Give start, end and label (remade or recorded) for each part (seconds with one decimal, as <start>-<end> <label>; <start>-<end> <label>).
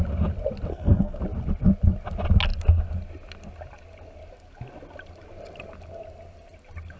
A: 0.0-0.7 recorded; 0.7-1.2 remade; 1.2-7.0 recorded